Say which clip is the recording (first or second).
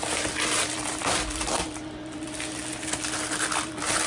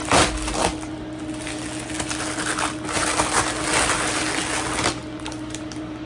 second